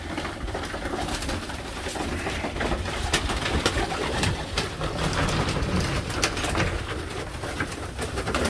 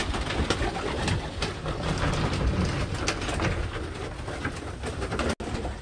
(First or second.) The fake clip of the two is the first